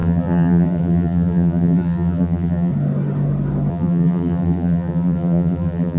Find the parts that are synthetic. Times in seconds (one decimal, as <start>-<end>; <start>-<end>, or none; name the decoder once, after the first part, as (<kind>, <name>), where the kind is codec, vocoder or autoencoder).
0.0-2.7 (vocoder, BigVGAN v2); 3.7-6.0